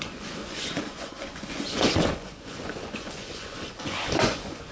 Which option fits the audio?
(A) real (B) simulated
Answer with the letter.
B